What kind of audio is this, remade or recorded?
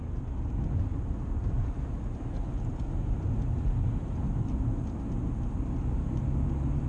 recorded